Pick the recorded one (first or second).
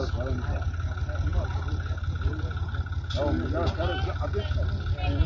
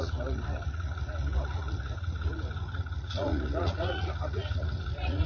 first